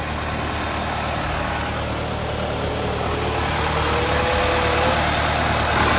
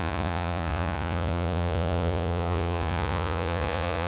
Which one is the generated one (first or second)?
second